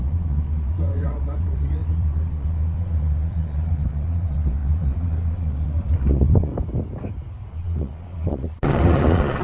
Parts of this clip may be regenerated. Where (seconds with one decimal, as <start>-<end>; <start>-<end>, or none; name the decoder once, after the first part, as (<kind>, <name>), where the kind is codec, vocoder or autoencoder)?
0.0-6.5 (vocoder, Vocos); 7.5-9.4